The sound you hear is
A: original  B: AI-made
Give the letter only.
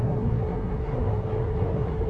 B